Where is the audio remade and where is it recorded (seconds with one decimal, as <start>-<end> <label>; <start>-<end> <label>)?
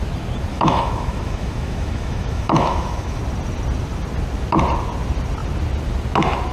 0.0-0.5 recorded; 0.5-3.2 remade; 3.2-6.5 recorded